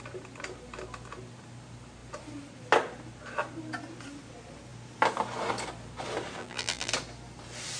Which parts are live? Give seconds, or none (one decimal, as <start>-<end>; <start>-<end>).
0.0-6.4; 6.9-7.8

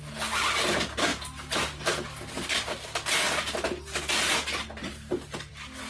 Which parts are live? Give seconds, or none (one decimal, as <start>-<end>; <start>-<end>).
0.0-1.1; 1.8-4.8; 5.5-5.9

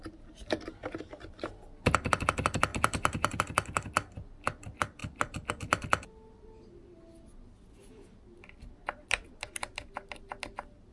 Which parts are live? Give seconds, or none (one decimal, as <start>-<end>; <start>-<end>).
0.0-0.8; 1.6-2.7; 3.4-10.9

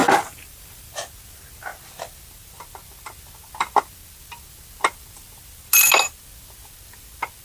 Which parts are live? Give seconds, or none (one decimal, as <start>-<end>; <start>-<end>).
0.9-7.4

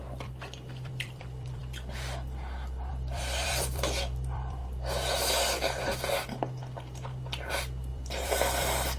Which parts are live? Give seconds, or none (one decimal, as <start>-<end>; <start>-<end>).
1.6-2.9; 4.6-7.5

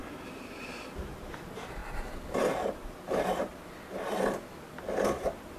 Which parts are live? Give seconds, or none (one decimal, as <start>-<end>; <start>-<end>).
1.8-2.3; 3.5-5.1

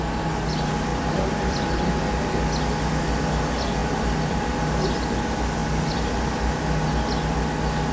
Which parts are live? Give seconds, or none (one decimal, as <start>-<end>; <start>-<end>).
0.0-0.9; 2.1-3.8; 4.5-5.6; 6.6-7.9